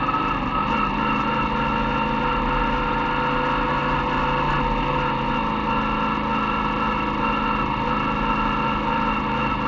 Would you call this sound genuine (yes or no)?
yes